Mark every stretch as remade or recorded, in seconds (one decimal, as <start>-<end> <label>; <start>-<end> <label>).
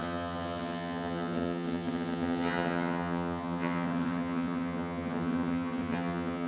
0.0-6.5 remade